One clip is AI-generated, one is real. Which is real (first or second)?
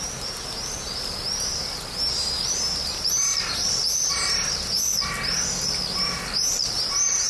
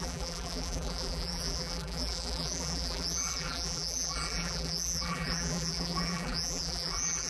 first